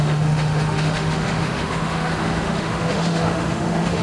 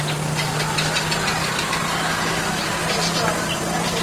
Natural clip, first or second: second